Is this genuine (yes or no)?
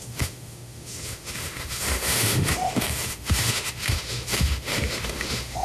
no